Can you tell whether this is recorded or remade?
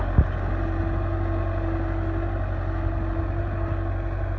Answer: recorded